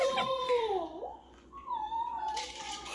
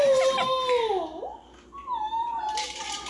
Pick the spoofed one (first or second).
first